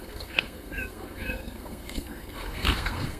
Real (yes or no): no